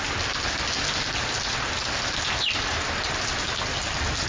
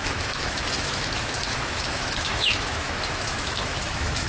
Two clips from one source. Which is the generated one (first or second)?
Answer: second